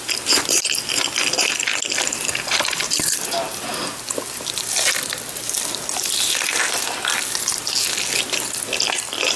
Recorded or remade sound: remade